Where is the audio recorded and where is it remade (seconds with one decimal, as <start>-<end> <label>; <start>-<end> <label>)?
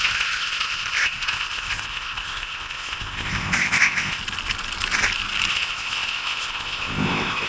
0.0-4.2 remade; 4.2-5.5 recorded; 5.5-7.5 remade